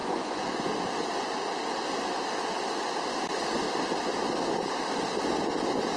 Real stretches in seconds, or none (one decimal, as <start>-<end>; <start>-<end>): 0.7-6.0